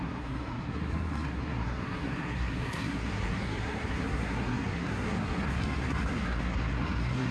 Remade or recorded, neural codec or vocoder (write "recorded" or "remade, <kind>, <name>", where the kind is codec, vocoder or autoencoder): remade, codec, SNAC